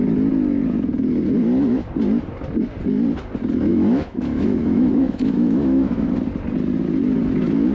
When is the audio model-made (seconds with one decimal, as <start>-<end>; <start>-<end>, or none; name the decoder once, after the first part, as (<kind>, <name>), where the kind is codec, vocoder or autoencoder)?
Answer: 3.7-6.1 (autoencoder, DAC-VAE)